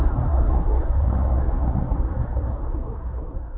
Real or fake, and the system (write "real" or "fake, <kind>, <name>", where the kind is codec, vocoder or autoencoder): fake, codec, SNAC